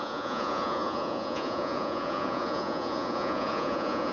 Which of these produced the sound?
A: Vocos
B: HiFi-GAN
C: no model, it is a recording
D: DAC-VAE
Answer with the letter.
A